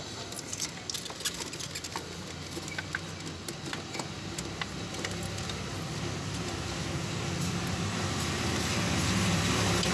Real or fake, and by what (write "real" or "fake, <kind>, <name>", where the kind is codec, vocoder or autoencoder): real